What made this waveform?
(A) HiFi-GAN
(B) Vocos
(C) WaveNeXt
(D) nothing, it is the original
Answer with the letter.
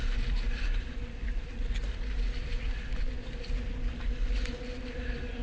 D